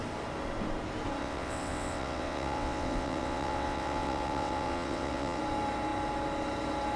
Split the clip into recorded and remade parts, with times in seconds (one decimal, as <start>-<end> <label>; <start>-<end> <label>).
0.0-1.2 recorded; 1.2-5.4 remade; 5.4-7.0 recorded